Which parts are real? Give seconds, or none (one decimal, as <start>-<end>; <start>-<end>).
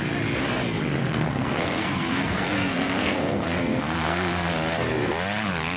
0.0-1.0; 4.5-5.8